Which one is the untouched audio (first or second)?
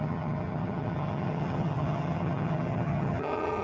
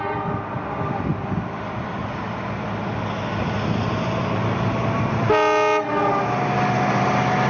second